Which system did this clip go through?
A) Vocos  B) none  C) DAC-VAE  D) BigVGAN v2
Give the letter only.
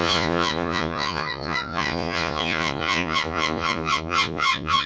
A